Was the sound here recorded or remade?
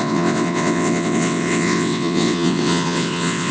remade